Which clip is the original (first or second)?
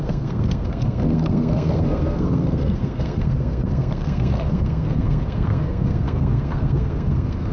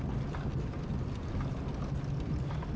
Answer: second